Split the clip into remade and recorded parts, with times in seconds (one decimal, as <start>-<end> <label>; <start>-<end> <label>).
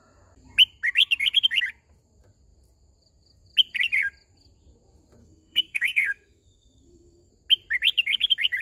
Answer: 0.0-5.2 recorded; 5.2-7.3 remade; 7.3-8.6 recorded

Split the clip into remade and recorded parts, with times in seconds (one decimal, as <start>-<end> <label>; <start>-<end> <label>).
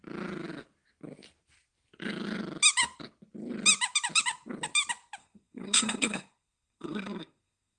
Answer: 0.0-5.2 recorded; 5.2-7.8 remade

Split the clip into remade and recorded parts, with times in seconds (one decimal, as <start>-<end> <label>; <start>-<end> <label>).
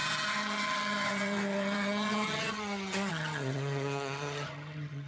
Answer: 0.0-5.1 remade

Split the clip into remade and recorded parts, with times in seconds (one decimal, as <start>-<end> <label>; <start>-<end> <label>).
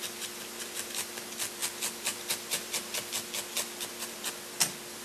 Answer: 0.0-5.0 recorded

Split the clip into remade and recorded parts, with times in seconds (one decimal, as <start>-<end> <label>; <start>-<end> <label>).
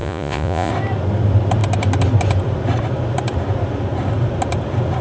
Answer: 0.0-0.7 remade; 0.7-5.0 recorded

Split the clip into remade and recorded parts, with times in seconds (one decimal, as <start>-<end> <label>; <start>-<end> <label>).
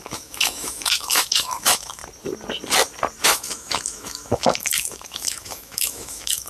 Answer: 0.0-2.0 remade; 2.0-3.2 recorded; 3.2-6.5 remade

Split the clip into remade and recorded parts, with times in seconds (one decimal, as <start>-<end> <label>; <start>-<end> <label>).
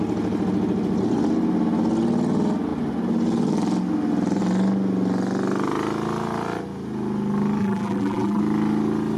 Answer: 0.0-7.6 recorded; 7.6-8.4 remade; 8.4-9.2 recorded